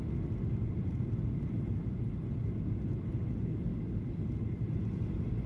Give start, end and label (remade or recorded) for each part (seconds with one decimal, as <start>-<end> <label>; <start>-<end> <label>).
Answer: 0.0-5.5 recorded